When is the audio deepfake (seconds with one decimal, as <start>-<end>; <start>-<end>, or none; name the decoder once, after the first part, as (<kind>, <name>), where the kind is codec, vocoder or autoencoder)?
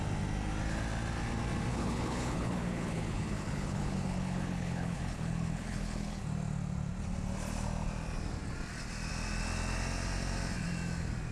1.7-6.2 (codec, HILCodec)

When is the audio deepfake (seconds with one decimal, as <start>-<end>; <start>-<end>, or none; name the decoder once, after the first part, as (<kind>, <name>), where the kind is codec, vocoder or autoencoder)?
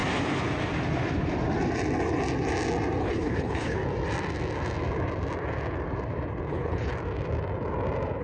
3.0-3.8 (codec, HILCodec); 6.5-6.9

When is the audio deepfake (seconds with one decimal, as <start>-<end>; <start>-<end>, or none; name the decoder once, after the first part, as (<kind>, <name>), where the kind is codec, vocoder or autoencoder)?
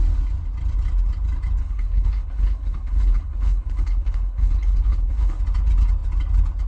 1.6-5.4 (codec, HILCodec)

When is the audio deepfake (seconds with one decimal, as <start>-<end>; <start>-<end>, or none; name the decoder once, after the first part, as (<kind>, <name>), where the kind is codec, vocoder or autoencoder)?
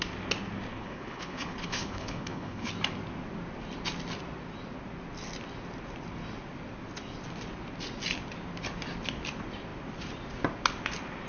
0.7-2.7 (codec, HILCodec)